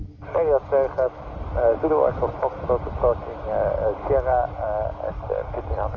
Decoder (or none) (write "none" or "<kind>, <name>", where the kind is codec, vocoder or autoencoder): none